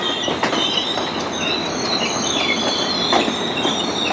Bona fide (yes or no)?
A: yes